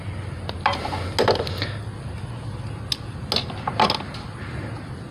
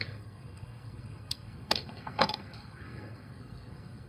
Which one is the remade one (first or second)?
second